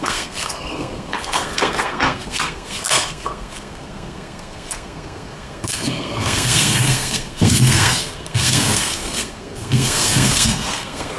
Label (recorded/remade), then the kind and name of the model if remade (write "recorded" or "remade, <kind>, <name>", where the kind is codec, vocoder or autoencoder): remade, codec, SNAC